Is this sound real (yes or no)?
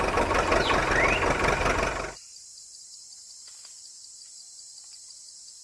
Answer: yes